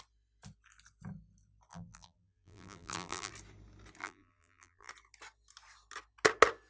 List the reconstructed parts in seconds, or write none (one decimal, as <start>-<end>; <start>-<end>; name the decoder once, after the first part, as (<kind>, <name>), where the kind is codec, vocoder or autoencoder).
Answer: 1.7-3.3 (vocoder, BigVGAN v2); 4.0-4.9